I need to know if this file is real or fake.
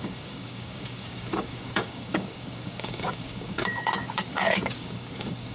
fake